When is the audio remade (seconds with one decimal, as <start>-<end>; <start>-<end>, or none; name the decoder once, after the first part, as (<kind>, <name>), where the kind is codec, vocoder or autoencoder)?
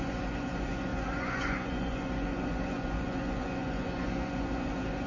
0.0-5.1 (vocoder, Vocos)